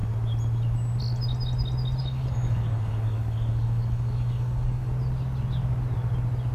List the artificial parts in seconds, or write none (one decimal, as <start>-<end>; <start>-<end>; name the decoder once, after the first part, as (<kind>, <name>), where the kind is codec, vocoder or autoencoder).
2.0-4.9 (codec, DAC)